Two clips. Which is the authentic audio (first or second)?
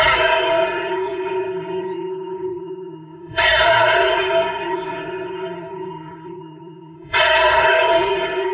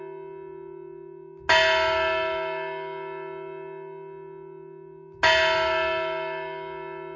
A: second